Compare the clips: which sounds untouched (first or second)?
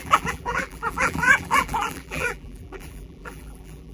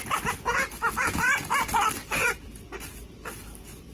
second